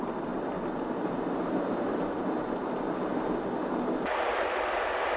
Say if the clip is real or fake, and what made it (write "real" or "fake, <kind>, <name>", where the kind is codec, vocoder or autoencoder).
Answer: real